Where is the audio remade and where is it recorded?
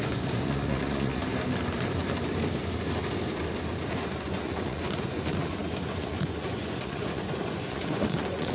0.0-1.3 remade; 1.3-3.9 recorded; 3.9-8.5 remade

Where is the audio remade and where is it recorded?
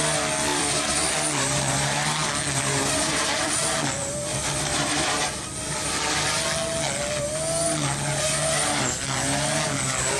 0.0-0.5 recorded; 0.5-1.1 remade; 1.1-4.3 recorded; 4.3-4.9 remade; 4.9-10.2 recorded